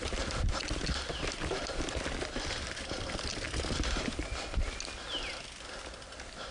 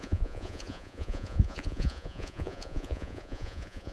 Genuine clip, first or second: first